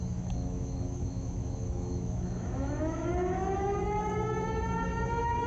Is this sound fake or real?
fake